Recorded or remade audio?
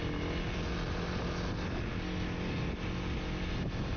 recorded